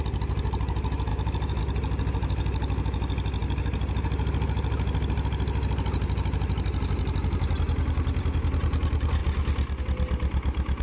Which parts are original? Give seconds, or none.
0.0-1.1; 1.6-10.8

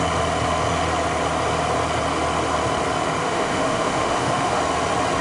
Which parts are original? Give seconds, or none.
0.0-3.2; 4.6-5.2

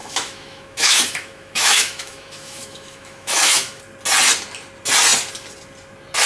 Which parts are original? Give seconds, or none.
3.8-6.3

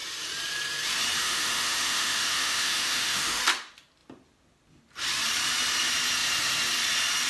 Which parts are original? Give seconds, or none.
0.0-1.2; 3.4-7.3

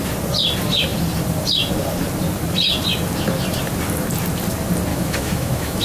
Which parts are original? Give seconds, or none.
0.0-4.9

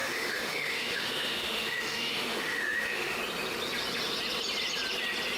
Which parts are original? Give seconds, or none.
3.2-5.4